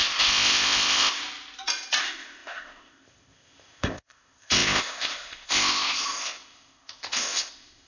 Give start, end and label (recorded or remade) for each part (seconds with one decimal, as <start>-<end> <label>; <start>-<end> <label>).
0.0-1.2 remade; 1.2-2.0 recorded; 2.0-7.9 remade